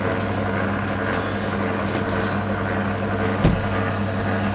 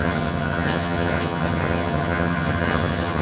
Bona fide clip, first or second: first